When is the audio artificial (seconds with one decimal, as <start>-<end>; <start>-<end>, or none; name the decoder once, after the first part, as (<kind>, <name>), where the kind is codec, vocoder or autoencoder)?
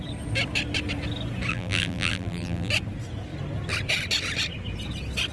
1.5-2.7 (vocoder, BigVGAN v2)